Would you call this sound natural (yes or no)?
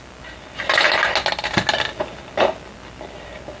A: yes